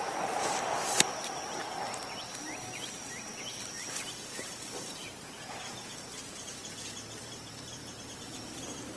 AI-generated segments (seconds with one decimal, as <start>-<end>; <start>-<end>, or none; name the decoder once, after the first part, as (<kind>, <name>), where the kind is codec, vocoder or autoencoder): 0.0-6.6 (vocoder, BigVGAN v2); 7.2-9.0